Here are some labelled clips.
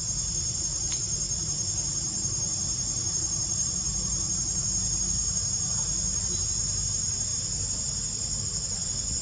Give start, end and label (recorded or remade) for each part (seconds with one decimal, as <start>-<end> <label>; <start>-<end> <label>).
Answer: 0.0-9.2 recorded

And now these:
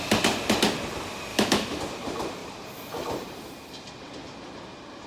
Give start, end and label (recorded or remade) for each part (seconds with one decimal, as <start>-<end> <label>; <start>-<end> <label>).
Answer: 0.0-1.3 recorded; 1.3-1.8 remade; 1.8-5.1 recorded

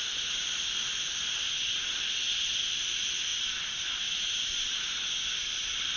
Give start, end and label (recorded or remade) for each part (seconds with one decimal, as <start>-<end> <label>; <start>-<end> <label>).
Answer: 0.0-6.0 recorded

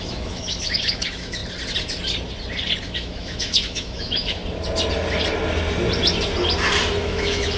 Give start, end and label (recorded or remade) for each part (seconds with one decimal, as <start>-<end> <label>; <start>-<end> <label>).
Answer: 0.0-1.4 remade; 1.4-2.8 recorded; 2.8-4.4 remade; 4.4-7.0 recorded; 7.0-7.6 remade

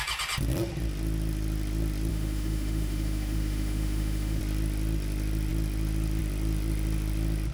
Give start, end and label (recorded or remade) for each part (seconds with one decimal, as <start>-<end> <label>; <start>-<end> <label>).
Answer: 0.0-2.1 recorded; 2.1-4.4 remade; 4.4-7.5 recorded

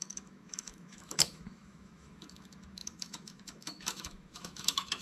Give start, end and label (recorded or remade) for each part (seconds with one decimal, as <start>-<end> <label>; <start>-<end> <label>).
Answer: 0.0-5.0 remade

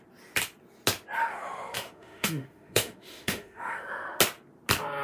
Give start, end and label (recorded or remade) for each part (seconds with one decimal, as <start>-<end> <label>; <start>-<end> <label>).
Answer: 0.0-1.2 recorded; 1.2-4.2 remade; 4.2-5.0 recorded

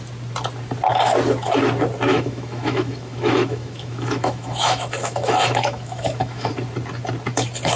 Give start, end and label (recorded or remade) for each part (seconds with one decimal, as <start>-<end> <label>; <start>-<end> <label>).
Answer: 0.0-2.1 recorded; 2.1-6.5 remade; 6.5-7.8 recorded